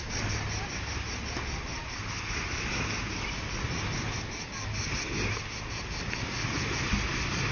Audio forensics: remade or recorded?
recorded